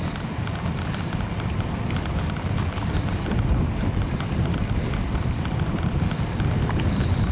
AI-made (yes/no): no